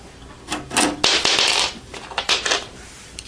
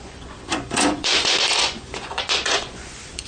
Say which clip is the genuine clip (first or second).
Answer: first